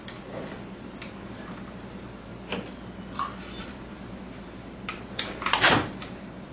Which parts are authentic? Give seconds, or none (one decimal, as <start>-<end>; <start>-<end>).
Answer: 2.3-3.6